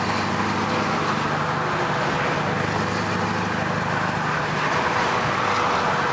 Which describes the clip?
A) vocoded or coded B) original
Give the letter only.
B